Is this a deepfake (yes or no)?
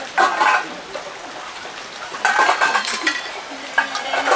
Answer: no